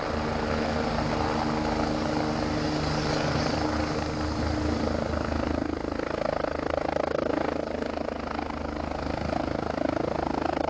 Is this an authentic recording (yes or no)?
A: yes